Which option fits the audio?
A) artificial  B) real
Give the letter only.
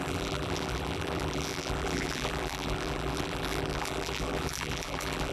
A